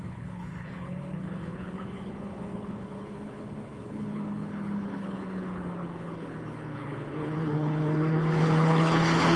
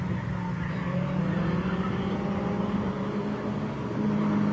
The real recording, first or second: second